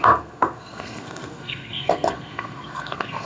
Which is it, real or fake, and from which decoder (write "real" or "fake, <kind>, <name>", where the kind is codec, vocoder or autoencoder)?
fake, codec, SNAC